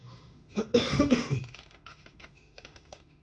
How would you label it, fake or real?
fake